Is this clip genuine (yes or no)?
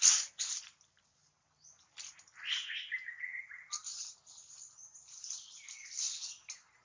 yes